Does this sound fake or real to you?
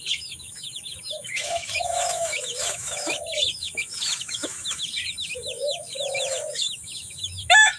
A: fake